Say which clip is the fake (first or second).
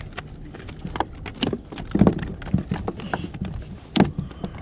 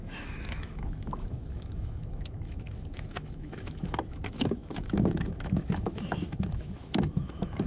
second